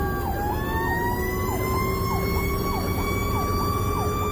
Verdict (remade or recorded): recorded